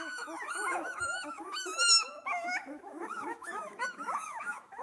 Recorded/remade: remade